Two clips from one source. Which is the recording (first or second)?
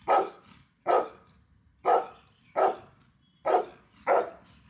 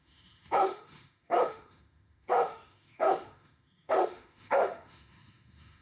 first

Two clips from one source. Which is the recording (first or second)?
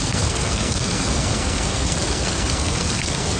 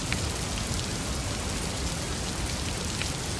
second